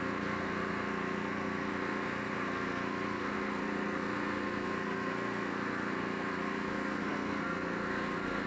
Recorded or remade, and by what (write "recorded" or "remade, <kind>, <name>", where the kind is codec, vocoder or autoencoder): remade, codec, SNAC